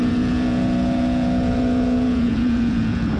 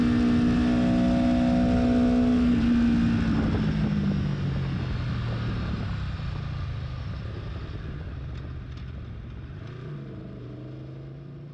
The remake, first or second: first